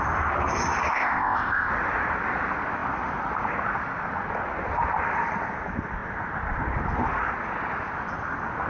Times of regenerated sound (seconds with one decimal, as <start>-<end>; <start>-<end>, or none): 0.9-1.7